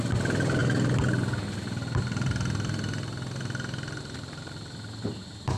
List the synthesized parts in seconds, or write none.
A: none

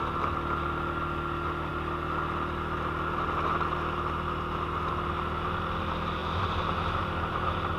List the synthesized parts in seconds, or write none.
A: none

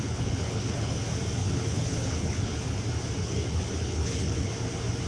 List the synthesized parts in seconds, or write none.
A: 0.0-1.0 (codec, HILCodec); 1.4-2.8; 3.2-4.5